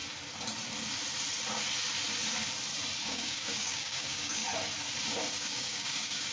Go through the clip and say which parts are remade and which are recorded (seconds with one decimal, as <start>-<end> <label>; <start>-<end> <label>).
0.0-3.0 recorded; 3.0-4.4 remade; 4.4-5.3 recorded; 5.3-6.3 remade